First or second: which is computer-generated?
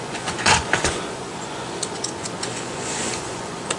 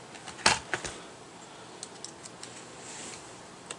first